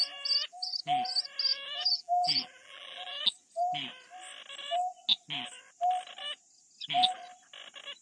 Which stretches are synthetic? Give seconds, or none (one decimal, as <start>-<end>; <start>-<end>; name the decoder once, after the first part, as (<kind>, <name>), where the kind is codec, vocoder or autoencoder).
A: 1.5-3.2 (vocoder, BigVGAN v2)